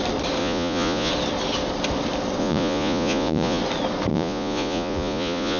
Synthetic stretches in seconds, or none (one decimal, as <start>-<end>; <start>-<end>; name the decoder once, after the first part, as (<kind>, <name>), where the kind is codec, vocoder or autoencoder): 0.4-1.1 (vocoder, Vocos); 2.4-3.6; 4.1-5.6